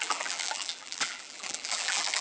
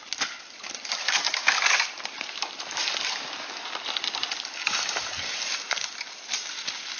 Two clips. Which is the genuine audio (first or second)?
second